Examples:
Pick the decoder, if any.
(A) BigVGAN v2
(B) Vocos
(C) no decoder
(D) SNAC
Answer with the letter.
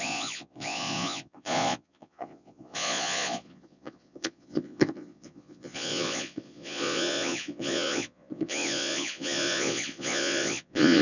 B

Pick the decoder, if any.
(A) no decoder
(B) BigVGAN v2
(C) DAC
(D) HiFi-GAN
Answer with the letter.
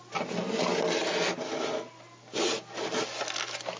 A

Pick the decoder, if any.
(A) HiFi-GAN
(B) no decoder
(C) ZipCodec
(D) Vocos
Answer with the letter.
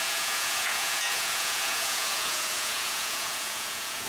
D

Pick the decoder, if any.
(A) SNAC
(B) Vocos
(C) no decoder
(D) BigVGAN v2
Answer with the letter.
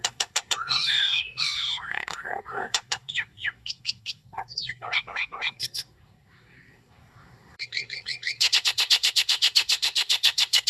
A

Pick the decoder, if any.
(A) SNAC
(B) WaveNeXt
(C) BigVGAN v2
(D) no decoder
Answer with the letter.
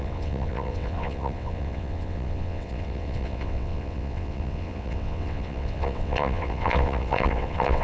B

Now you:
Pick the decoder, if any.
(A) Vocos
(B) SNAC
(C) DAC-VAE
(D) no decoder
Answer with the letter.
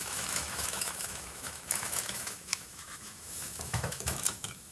C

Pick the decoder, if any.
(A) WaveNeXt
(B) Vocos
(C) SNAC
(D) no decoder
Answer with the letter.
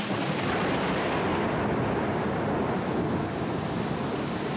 D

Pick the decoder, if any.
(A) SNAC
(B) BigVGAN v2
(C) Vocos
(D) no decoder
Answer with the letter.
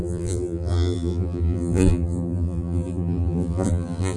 B